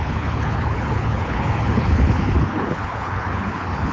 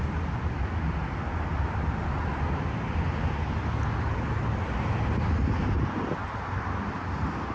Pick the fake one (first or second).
first